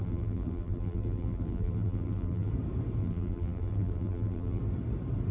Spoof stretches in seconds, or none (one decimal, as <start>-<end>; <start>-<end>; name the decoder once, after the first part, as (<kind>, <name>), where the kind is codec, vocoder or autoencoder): 0.0-2.5 (vocoder, BigVGAN v2); 3.0-4.6